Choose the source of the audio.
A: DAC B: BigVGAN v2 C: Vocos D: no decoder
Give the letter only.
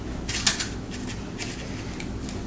D